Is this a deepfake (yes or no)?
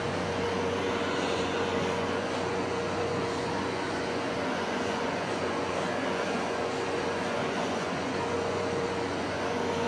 yes